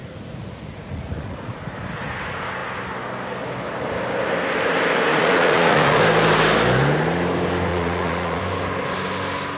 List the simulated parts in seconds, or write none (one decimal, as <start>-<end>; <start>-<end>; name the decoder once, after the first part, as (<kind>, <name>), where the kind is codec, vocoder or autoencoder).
0.0-1.6 (vocoder, Vocos); 5.1-6.0; 7.7-8.4